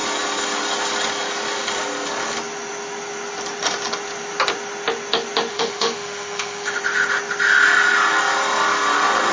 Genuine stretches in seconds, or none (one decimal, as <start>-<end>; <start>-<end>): 0.0-5.5; 6.8-9.3